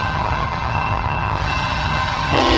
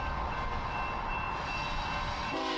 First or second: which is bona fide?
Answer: second